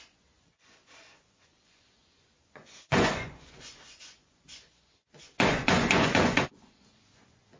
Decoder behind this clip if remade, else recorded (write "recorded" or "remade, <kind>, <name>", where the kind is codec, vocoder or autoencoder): remade, vocoder, Vocos